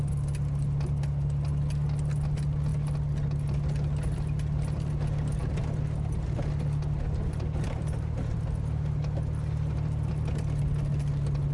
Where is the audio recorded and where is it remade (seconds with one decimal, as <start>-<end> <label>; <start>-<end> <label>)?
0.0-11.5 recorded